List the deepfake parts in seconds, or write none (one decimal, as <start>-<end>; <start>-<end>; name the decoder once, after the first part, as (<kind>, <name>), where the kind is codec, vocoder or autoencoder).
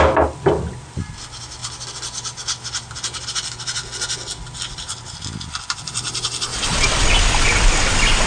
6.5-7.1 (vocoder, Vocos)